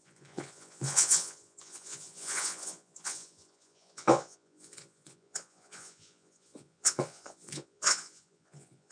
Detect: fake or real fake